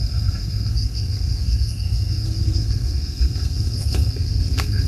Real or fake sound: fake